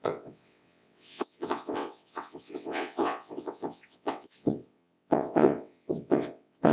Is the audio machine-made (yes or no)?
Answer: yes